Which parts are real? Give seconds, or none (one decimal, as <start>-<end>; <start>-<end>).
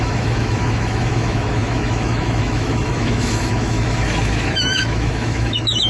none